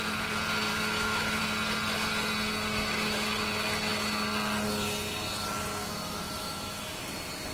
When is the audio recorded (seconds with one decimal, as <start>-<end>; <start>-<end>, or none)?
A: 0.0-0.7; 1.4-2.7; 3.3-5.8; 7.0-7.5